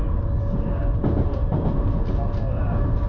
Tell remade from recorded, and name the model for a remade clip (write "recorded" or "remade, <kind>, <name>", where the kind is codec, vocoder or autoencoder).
recorded